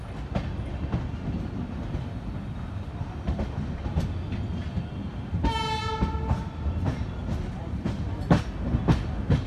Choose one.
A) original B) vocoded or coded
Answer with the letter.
A